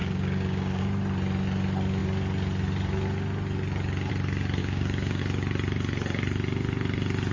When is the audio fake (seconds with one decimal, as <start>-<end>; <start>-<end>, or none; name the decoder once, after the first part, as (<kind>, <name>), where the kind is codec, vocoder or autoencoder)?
0.0-0.8 (codec, DAC); 4.6-5.2

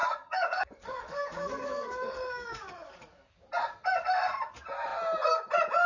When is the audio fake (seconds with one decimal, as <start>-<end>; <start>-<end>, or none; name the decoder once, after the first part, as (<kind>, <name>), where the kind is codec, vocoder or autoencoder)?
0.0-3.5 (codec, DAC)

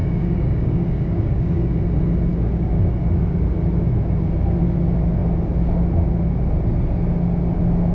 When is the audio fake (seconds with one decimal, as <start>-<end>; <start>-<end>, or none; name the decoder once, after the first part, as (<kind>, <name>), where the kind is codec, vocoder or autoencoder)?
0.0-1.7 (codec, DAC); 2.3-2.9

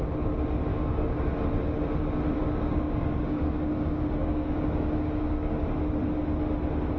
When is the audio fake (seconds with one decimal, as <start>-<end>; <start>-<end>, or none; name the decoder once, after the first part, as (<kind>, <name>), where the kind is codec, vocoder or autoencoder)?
0.7-1.3 (codec, DAC); 2.4-5.6